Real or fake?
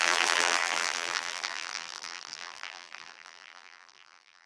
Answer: fake